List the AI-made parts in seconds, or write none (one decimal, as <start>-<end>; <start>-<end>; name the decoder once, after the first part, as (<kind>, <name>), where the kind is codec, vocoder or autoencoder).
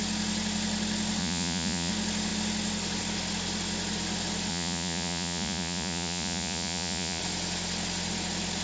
1.2-1.9 (vocoder, Vocos); 4.5-7.2